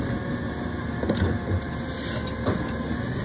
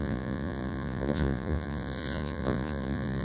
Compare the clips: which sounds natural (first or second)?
first